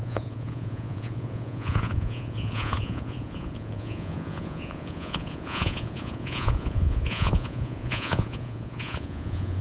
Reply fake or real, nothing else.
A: fake